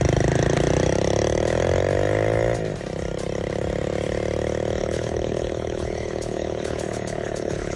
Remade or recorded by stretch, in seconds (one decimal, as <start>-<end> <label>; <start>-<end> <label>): 0.0-4.8 recorded; 4.8-7.8 remade